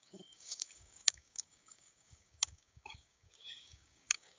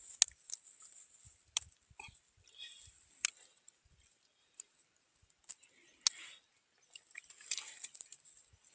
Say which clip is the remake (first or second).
first